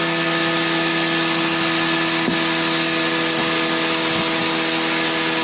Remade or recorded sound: recorded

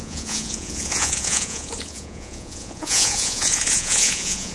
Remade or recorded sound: remade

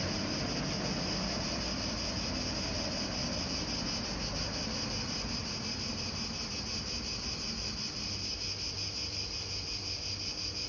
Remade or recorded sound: recorded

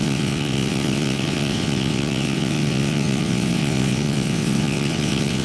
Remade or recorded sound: remade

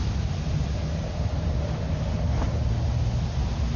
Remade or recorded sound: recorded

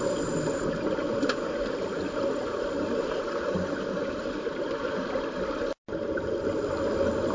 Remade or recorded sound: recorded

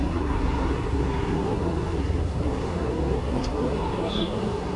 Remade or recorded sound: remade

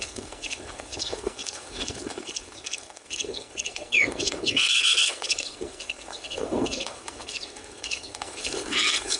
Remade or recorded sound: remade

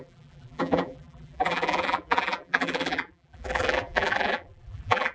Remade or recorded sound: remade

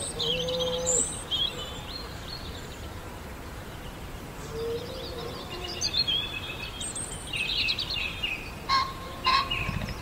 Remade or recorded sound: remade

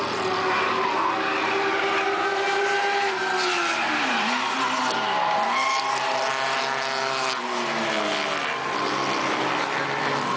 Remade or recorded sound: recorded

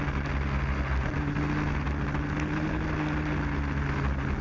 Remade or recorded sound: recorded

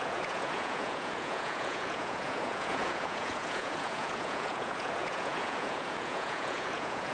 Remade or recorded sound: remade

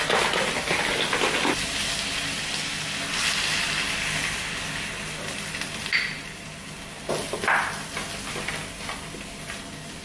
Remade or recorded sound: recorded